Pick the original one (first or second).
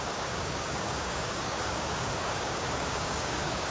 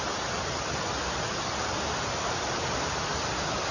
second